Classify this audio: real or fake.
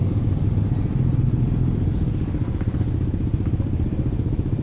real